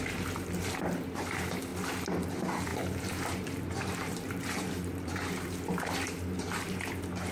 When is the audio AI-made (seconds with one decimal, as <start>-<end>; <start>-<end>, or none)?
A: 0.0-1.7; 2.3-7.3